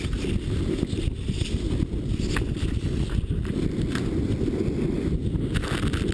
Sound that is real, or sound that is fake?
real